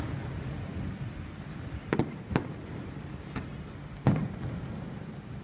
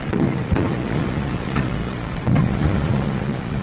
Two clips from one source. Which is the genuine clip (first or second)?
first